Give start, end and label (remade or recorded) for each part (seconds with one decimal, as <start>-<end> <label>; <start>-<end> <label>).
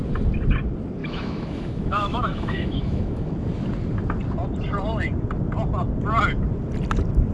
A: 0.0-1.0 recorded; 1.0-3.3 remade; 3.3-7.3 recorded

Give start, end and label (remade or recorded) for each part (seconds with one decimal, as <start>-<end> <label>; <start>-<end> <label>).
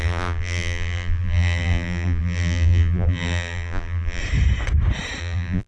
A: 0.0-4.2 remade; 4.2-5.2 recorded; 5.2-5.7 remade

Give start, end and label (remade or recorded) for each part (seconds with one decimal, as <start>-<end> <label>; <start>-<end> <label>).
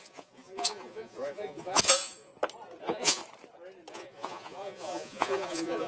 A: 0.0-2.3 remade; 2.3-2.8 recorded; 2.8-3.2 remade; 3.2-3.9 recorded; 3.9-5.9 remade